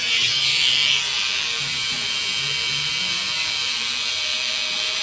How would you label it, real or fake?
fake